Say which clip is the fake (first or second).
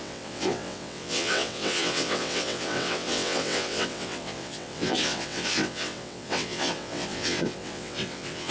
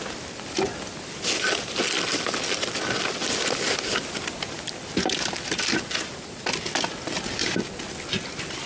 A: first